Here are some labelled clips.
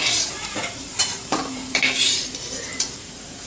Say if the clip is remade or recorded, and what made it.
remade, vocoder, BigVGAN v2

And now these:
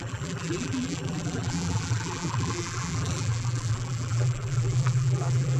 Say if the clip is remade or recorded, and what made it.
remade, vocoder, BigVGAN v2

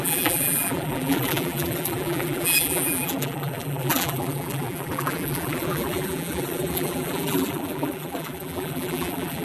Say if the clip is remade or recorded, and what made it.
remade, vocoder, BigVGAN v2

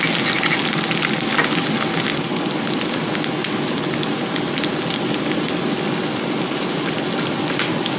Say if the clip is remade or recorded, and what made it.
recorded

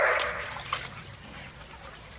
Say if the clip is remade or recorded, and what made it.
recorded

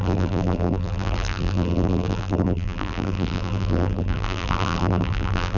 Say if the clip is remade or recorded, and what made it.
remade, vocoder, BigVGAN v2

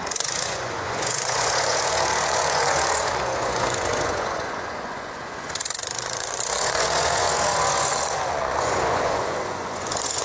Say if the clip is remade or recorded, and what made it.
remade, vocoder, Vocos